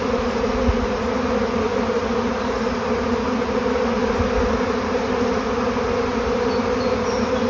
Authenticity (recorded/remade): recorded